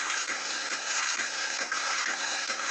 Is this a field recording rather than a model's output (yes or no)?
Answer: no